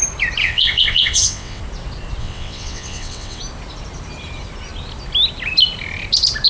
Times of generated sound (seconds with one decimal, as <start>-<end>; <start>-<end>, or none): 0.4-1.6; 2.2-3.4